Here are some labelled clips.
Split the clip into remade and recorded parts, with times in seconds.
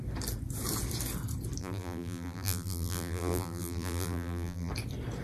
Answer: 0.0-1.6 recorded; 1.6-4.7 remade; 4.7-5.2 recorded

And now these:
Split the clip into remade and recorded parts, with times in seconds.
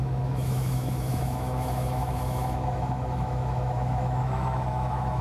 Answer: 0.0-5.2 remade